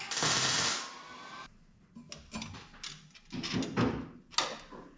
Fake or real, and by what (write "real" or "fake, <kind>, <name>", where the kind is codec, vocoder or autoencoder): real